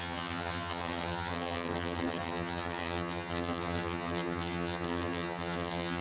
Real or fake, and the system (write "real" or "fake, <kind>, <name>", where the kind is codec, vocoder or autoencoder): fake, vocoder, HiFi-GAN